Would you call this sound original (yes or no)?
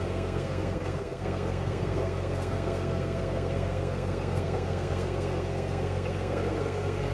no